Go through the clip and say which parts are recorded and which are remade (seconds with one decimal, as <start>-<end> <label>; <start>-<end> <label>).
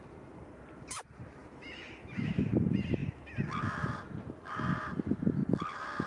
0.0-1.4 recorded; 1.4-2.5 remade; 2.5-6.1 recorded